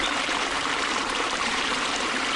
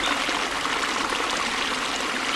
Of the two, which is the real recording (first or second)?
second